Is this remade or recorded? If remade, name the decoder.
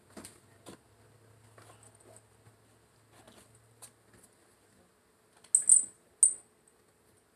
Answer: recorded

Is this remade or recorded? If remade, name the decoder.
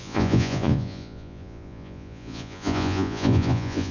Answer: remade, vocoder, Vocos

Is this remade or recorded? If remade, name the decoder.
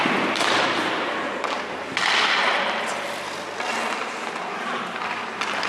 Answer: recorded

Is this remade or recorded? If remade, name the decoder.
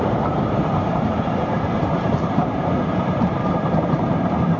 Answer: remade, vocoder, BigVGAN v2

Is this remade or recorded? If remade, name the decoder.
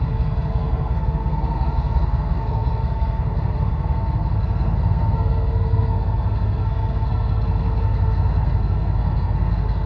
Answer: remade, codec, SNAC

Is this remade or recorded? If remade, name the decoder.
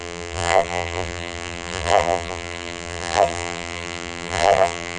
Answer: remade, vocoder, BigVGAN v2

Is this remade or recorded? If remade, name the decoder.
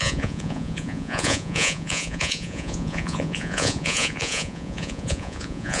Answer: remade, vocoder, Vocos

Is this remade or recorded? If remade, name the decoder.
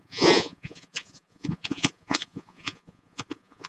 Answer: remade, vocoder, Vocos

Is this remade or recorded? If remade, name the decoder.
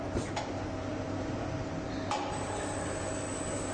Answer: recorded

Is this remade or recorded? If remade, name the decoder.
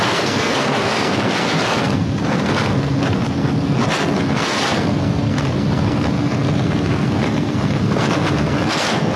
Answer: remade, codec, SNAC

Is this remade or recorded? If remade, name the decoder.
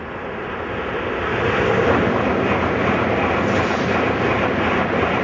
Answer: recorded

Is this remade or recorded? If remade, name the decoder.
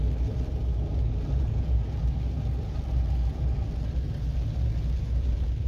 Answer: recorded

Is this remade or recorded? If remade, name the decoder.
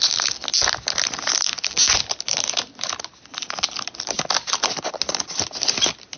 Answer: recorded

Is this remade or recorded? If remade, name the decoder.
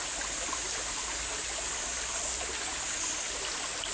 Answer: recorded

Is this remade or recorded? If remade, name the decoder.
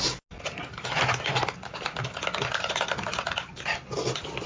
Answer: recorded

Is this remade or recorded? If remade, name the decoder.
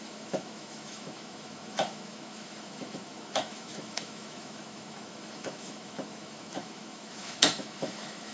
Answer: remade, autoencoder, DAC-VAE